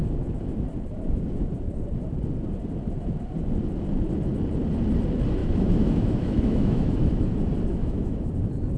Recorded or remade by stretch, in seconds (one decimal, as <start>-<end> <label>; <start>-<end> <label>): 0.0-5.4 recorded; 5.4-7.3 remade; 7.3-7.7 recorded; 7.7-8.3 remade; 8.3-8.8 recorded